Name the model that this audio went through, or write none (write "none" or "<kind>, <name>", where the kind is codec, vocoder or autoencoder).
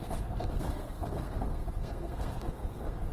codec, SNAC